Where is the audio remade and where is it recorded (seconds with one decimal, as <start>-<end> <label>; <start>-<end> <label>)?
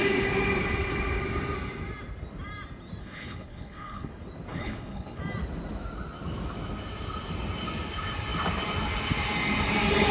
0.0-3.0 recorded; 3.0-4.1 remade; 4.1-4.5 recorded; 4.5-5.2 remade; 5.2-10.1 recorded